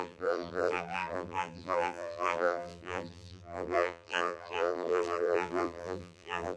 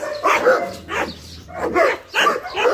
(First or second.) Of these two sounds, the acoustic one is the second